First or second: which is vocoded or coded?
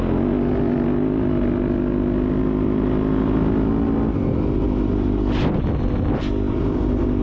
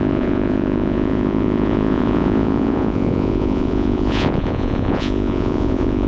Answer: second